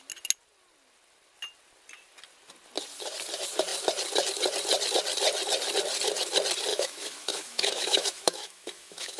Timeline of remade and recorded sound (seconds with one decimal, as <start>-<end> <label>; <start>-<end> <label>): 0.0-6.7 recorded; 6.7-9.2 remade